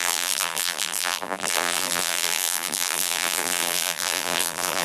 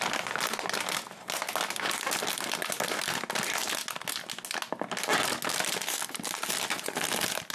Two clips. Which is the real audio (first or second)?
second